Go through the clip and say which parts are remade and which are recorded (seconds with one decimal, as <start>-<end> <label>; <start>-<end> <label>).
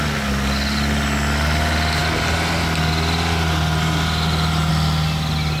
0.0-5.6 recorded